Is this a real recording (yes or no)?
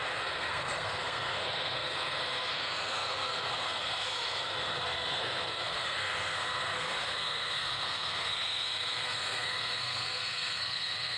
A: no